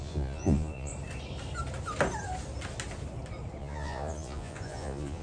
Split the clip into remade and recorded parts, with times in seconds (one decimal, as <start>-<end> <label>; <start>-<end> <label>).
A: 0.0-0.9 remade; 0.9-3.6 recorded; 3.6-5.2 remade